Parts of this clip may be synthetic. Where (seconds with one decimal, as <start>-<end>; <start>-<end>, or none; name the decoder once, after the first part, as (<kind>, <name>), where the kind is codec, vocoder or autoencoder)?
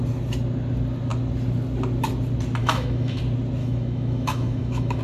2.6-3.2 (autoencoder, DAC-VAE); 3.6-5.0